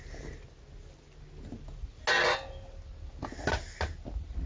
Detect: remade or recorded recorded